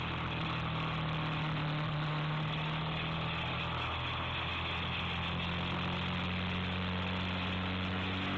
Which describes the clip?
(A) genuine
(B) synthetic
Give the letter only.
A